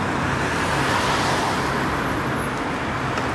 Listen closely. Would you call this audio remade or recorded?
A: recorded